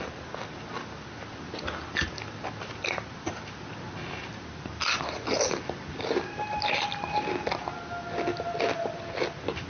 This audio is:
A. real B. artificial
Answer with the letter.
A